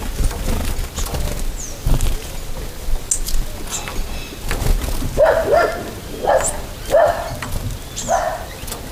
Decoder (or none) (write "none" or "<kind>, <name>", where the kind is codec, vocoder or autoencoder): none